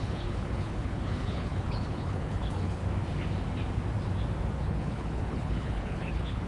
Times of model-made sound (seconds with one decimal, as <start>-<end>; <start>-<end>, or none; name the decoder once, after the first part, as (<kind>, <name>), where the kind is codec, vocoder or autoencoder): 0.0-2.8 (codec, HILCodec); 4.6-6.5